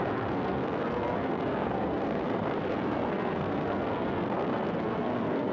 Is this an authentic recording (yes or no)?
no